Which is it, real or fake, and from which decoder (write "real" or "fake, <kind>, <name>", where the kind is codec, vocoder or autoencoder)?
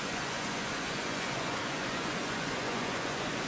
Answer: fake, vocoder, Vocos